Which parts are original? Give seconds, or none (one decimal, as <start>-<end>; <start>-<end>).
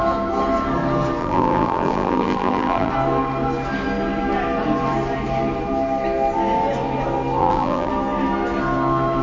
0.0-1.2; 2.9-7.4; 7.9-9.2